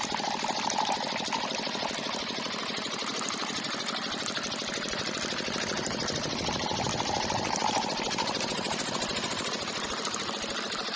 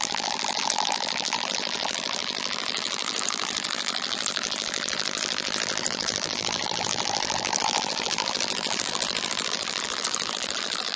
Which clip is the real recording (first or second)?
first